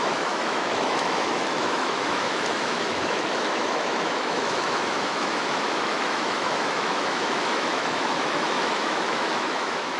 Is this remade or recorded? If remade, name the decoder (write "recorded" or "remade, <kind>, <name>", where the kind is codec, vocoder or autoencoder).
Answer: remade, autoencoder, DAC-VAE